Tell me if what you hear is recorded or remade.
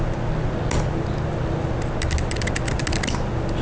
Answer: recorded